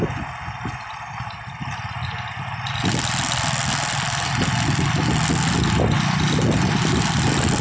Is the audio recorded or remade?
recorded